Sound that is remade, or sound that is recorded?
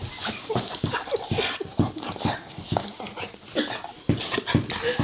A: recorded